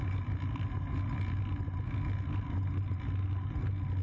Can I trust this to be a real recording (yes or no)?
yes